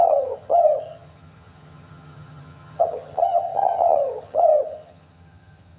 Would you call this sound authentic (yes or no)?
no